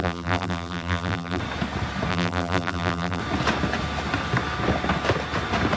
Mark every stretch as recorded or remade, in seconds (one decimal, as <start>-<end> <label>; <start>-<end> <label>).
0.0-1.4 remade; 1.4-2.1 recorded; 2.1-3.2 remade; 3.2-5.8 recorded